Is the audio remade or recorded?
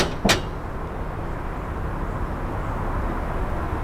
recorded